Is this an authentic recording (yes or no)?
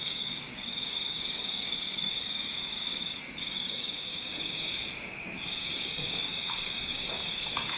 no